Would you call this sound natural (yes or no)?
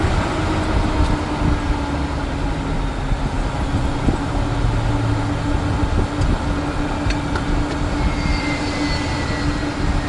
yes